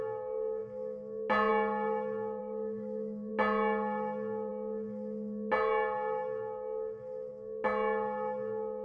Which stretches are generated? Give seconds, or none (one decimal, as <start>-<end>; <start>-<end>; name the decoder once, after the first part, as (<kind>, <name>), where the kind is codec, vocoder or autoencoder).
2.4-3.3 (autoencoder, DAC-VAE)